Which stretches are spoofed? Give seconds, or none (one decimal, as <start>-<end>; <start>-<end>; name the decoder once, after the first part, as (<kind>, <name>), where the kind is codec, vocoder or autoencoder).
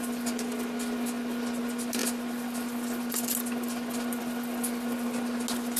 none